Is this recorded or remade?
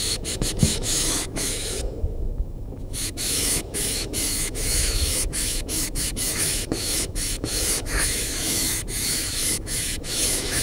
remade